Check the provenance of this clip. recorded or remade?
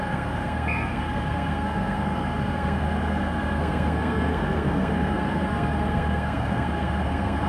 remade